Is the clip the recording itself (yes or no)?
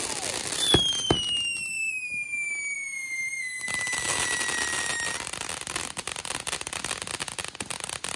yes